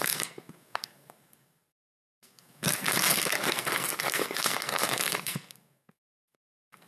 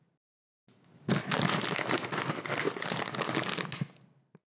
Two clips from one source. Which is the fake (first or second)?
first